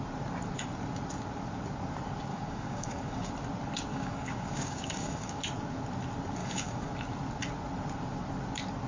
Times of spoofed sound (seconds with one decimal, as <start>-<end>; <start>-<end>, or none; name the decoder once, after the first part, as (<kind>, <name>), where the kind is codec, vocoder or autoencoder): 2.3-3.3 (codec, DAC); 3.9-5.4; 6.4-6.9